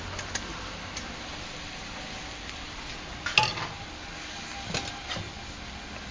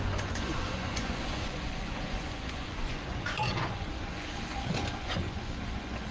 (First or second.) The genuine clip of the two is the first